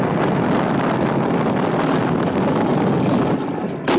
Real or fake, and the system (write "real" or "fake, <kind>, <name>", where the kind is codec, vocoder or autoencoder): real